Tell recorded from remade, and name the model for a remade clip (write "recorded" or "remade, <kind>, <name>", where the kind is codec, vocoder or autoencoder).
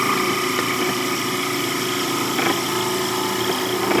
recorded